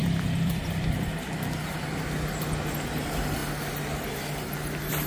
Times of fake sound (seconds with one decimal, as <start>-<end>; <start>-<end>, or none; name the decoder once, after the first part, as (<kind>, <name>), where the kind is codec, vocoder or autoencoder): 0.0-1.1 (vocoder, BigVGAN v2)